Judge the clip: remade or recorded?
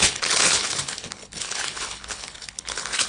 remade